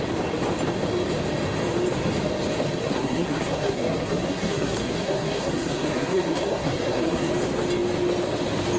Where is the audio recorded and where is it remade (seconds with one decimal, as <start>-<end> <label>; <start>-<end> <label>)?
0.0-2.8 recorded; 2.8-7.3 remade; 7.3-8.8 recorded